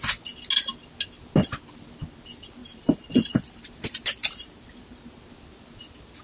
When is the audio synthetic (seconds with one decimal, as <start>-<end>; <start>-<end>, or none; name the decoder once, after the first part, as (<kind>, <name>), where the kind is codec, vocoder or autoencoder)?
2.6-5.1 (vocoder, BigVGAN v2)